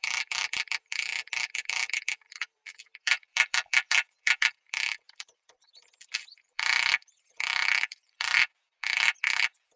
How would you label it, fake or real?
fake